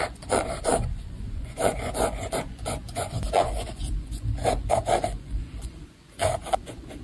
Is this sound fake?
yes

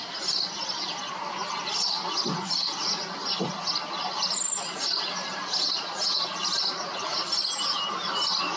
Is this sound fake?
no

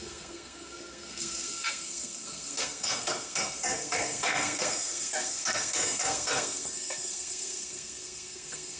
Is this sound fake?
yes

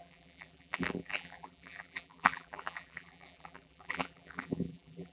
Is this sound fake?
yes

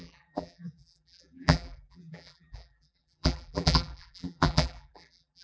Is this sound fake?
yes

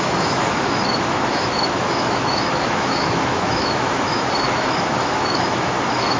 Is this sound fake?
yes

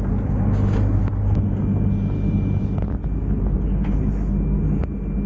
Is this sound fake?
no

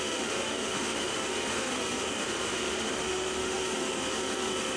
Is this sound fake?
yes